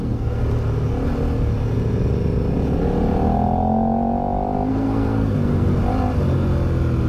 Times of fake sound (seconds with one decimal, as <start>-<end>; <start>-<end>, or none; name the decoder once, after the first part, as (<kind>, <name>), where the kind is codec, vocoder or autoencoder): 0.0-0.4 (codec, SNAC); 4.7-5.8